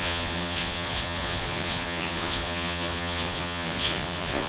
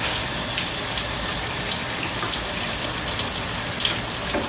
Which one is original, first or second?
second